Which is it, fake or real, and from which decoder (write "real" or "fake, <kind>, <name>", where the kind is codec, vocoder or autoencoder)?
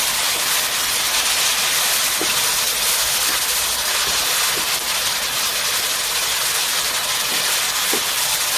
real